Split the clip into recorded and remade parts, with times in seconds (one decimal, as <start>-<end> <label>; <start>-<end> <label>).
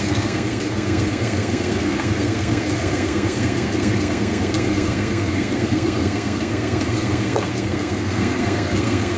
0.0-9.2 remade